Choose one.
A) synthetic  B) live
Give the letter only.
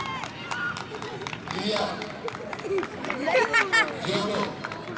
B